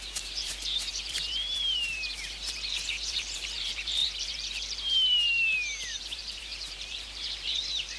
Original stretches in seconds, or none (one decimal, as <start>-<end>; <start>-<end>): none